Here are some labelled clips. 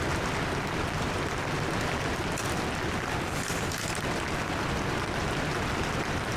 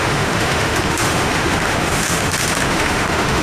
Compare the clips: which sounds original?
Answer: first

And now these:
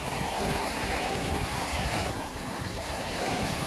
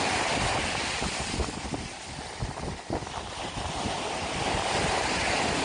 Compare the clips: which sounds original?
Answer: second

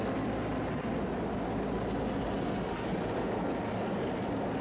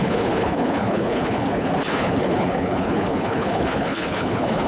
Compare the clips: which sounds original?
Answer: first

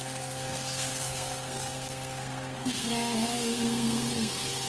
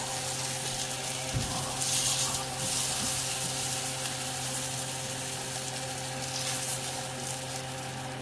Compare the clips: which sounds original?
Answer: second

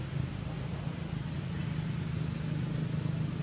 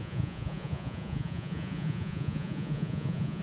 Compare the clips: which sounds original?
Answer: first